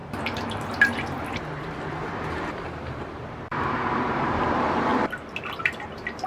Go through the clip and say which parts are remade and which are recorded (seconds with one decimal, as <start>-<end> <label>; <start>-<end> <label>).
0.0-4.9 remade; 4.9-5.6 recorded; 5.6-6.3 remade